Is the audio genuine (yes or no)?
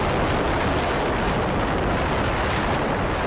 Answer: yes